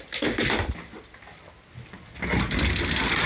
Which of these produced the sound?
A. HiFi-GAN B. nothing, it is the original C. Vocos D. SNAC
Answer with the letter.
B